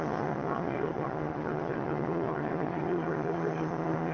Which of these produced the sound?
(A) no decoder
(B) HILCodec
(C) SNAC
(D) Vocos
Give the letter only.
D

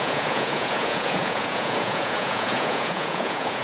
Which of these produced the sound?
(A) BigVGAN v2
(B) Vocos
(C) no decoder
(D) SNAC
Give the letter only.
B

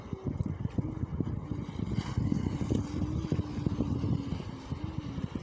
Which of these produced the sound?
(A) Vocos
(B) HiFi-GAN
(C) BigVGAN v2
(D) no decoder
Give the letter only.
D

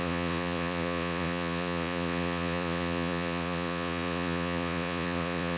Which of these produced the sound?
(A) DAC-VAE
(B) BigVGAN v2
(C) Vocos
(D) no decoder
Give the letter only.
C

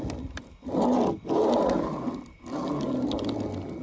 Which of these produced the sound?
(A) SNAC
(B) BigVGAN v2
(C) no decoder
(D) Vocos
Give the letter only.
C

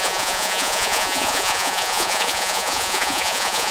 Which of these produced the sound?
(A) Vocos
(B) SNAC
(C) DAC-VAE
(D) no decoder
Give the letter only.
A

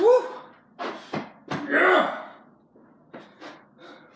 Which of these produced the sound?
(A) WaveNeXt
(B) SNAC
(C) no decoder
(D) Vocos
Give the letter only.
C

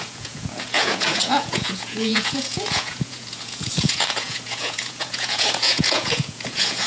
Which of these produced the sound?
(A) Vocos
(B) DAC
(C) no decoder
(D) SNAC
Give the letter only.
A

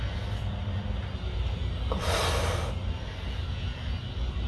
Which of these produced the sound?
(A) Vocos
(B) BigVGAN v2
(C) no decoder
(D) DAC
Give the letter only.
C